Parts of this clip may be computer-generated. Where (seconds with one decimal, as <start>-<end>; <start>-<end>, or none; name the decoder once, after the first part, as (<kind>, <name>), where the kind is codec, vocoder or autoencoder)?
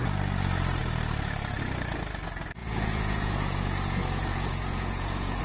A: 2.6-5.4 (vocoder, Vocos)